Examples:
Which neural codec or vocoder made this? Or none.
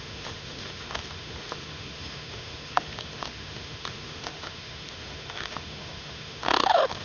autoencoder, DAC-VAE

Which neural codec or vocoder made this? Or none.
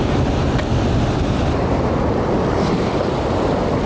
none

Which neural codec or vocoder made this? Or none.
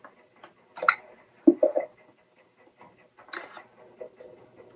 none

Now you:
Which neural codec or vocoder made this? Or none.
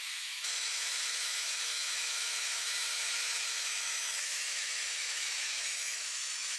autoencoder, DAC-VAE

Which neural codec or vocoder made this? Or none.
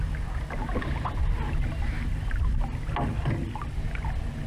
none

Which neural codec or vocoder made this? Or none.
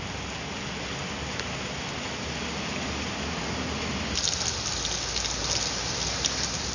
none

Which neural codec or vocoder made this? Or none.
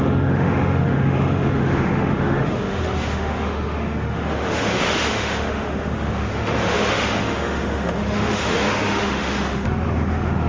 autoencoder, DAC-VAE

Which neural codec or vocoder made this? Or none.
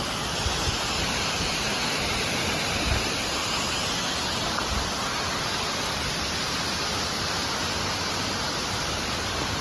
none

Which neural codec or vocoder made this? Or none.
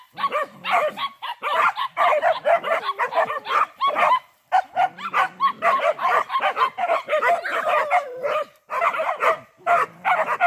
none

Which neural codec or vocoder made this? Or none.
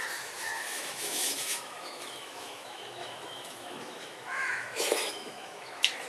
autoencoder, DAC-VAE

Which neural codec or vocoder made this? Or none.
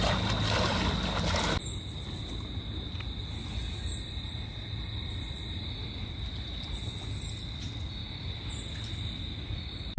none